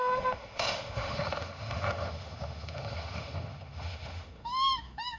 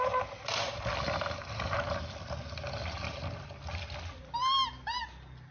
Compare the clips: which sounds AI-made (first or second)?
first